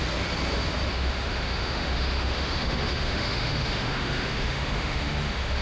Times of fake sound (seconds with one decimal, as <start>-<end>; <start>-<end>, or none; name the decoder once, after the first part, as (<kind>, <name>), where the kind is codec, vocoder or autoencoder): 0.9-5.6 (autoencoder, DAC-VAE)

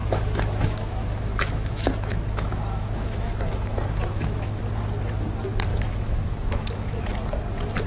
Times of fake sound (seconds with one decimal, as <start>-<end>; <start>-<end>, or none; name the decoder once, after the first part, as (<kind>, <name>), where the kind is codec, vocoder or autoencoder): 0.0-4.6 (autoencoder, DAC-VAE); 5.7-7.1

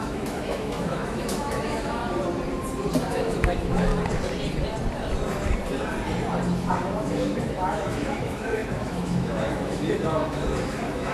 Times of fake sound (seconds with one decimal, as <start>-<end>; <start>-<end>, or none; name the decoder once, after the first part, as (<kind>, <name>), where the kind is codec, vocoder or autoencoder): 0.0-2.0 (autoencoder, DAC-VAE); 3.1-3.9; 6.7-11.1

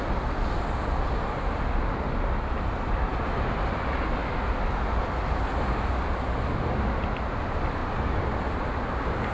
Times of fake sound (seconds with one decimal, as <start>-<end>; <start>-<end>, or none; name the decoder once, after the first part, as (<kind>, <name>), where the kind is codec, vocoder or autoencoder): none

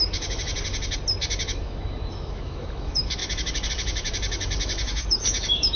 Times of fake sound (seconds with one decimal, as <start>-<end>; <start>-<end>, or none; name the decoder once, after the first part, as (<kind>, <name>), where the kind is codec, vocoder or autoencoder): 0.0-0.5 (autoencoder, DAC-VAE); 1.2-5.8